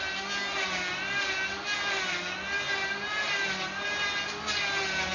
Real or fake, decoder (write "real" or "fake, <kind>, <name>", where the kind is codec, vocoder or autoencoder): real